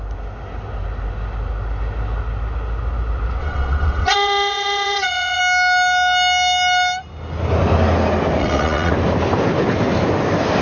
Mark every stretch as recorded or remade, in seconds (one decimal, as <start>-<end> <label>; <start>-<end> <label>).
0.0-3.4 recorded; 3.4-5.4 remade; 5.4-8.4 recorded; 8.4-8.9 remade; 8.9-10.6 recorded